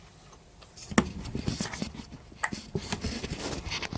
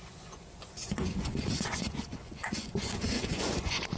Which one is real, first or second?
first